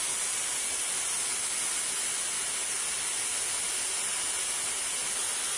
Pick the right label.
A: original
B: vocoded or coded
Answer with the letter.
A